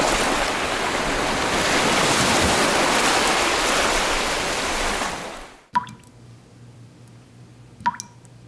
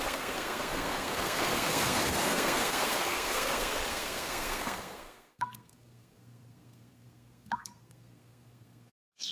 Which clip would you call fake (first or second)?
second